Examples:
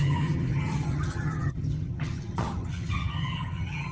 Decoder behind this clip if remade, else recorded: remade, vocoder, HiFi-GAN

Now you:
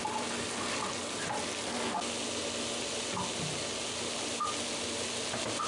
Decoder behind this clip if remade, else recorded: recorded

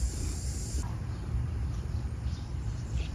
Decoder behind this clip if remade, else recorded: remade, vocoder, BigVGAN v2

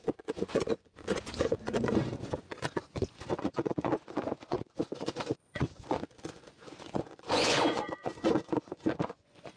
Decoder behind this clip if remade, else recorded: remade, vocoder, Vocos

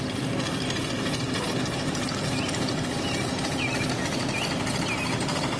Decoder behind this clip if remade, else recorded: recorded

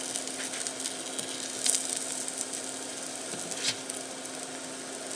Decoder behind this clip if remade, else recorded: recorded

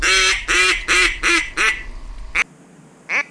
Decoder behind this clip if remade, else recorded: recorded